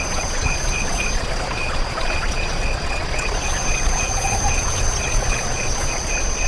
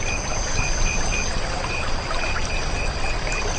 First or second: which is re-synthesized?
first